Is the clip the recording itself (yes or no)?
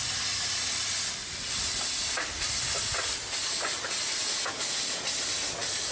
yes